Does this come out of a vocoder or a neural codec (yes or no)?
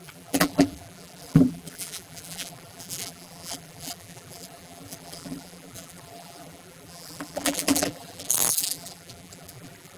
yes